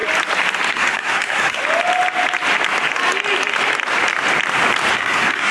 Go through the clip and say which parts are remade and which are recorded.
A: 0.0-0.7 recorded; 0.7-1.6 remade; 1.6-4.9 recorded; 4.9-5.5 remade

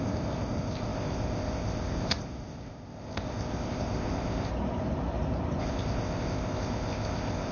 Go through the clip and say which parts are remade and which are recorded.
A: 0.0-4.5 remade; 4.5-5.6 recorded; 5.6-7.5 remade